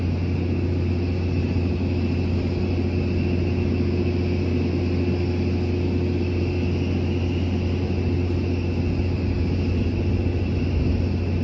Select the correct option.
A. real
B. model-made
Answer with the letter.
A